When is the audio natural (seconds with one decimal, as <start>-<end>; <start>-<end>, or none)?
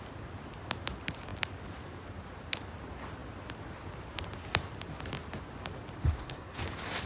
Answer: 0.0-6.1; 6.6-7.1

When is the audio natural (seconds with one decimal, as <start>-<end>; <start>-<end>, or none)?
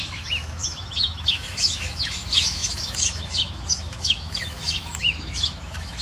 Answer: none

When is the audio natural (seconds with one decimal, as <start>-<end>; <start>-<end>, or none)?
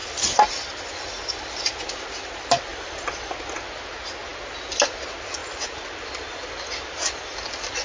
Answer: 0.0-2.7; 3.3-7.8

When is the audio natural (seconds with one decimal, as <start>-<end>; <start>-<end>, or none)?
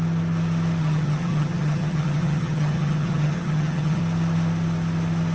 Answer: 0.0-0.8; 4.0-5.3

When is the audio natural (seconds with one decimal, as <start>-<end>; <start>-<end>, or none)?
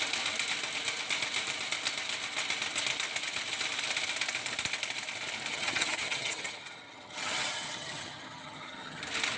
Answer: 0.0-5.5; 9.0-9.4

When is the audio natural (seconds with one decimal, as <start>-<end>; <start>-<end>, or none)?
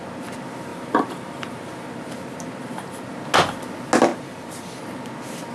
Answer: 0.0-0.7; 1.9-4.1; 4.8-5.5